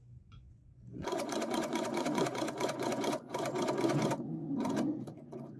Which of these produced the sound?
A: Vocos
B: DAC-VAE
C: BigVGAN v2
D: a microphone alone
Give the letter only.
A